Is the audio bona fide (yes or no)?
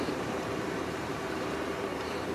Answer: no